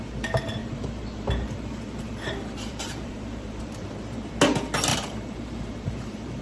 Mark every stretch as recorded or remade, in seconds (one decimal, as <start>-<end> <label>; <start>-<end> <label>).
0.0-0.6 recorded; 0.6-4.3 remade; 4.3-4.9 recorded; 4.9-6.4 remade